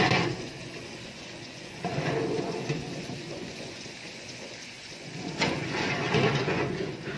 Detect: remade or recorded remade